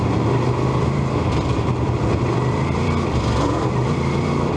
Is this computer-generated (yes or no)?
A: yes